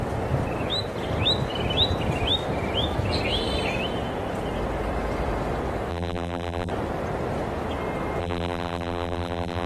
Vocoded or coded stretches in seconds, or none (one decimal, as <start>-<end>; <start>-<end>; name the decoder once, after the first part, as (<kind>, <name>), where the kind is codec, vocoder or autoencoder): 5.9-6.7 (vocoder, BigVGAN v2); 8.2-9.7